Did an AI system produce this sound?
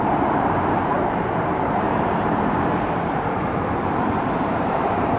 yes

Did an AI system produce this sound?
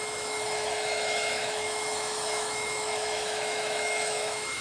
yes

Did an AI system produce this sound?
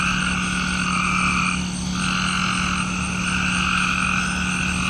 no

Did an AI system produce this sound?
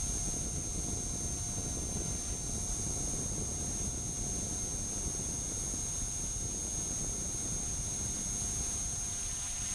no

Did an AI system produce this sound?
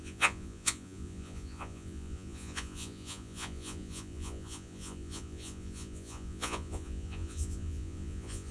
yes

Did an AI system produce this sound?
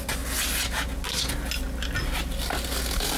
no